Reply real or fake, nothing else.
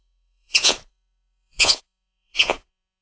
fake